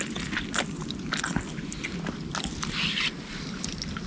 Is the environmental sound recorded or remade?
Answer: recorded